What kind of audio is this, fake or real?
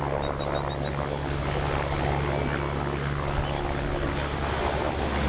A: real